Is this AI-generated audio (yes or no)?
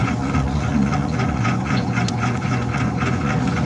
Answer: yes